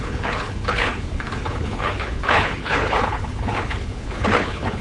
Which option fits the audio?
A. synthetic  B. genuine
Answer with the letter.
A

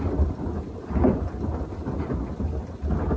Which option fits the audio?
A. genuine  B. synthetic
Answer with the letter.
A